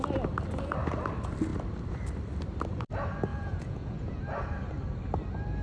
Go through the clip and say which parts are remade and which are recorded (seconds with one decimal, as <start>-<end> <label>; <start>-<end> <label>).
0.0-3.3 recorded; 3.3-4.2 remade; 4.2-5.6 recorded